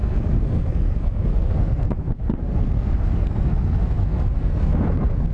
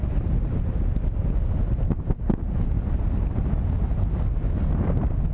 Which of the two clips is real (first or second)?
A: second